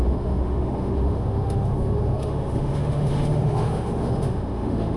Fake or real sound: fake